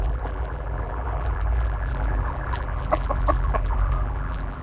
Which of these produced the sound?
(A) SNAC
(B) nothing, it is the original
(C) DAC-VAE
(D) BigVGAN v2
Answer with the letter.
D